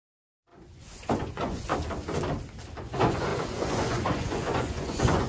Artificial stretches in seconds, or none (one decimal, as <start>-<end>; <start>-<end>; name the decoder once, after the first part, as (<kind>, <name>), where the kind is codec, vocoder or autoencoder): 0.0-1.7 (vocoder, Vocos); 2.8-5.3

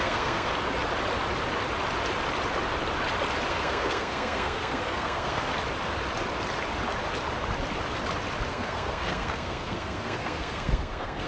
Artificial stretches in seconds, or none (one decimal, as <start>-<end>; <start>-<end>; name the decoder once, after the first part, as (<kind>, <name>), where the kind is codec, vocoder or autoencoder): 0.0-0.5 (codec, SNAC); 3.5-5.5; 8.5-11.3

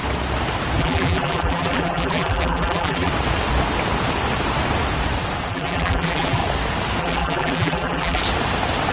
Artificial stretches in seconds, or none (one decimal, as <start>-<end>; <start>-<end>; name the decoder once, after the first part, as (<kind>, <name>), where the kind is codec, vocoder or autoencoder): 0.8-3.1 (vocoder, BigVGAN v2); 5.5-6.4; 7.0-8.2